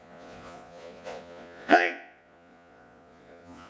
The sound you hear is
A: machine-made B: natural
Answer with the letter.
A